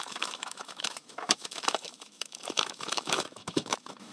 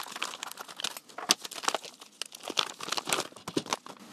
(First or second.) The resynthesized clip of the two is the first